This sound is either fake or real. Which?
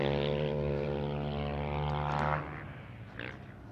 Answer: real